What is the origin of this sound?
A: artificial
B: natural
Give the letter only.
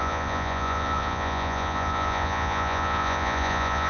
A